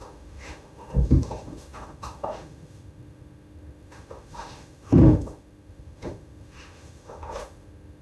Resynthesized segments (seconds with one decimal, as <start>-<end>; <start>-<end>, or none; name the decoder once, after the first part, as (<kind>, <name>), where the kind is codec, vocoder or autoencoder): 0.0-8.0 (autoencoder, DAC-VAE)

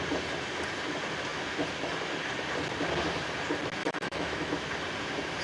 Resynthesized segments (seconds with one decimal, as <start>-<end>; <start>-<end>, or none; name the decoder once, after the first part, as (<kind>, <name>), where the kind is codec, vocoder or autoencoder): 3.8-4.5 (autoencoder, DAC-VAE)